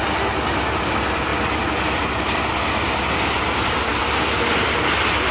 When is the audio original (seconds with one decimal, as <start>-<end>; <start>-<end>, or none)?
0.0-5.3